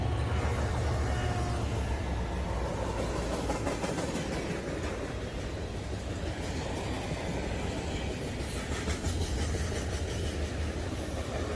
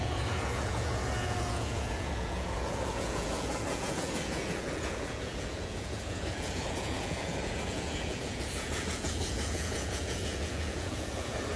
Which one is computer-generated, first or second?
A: second